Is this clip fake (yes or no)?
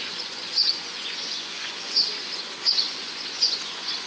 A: yes